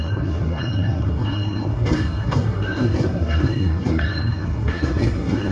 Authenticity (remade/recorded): remade